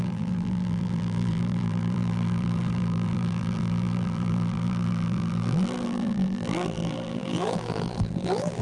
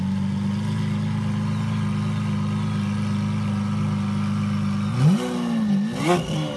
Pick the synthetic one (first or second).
first